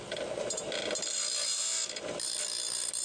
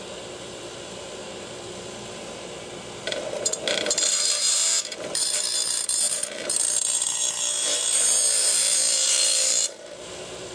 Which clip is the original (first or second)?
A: first